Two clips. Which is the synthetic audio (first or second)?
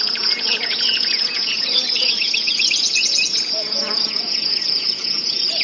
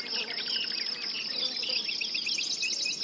first